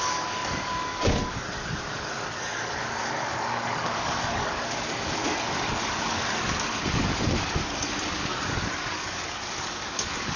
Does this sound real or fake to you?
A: fake